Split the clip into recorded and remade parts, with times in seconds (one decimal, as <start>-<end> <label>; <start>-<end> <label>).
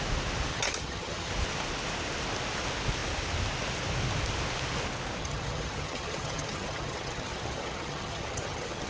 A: 0.0-0.5 recorded; 0.5-1.3 remade; 1.3-5.2 recorded; 5.2-8.9 remade